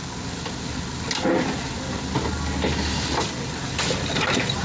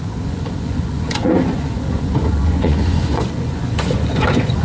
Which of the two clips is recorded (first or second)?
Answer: first